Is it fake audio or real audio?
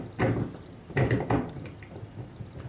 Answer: real